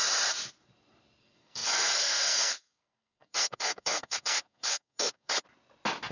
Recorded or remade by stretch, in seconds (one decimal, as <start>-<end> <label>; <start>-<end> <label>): 0.0-1.2 recorded; 1.2-5.3 remade; 5.3-6.1 recorded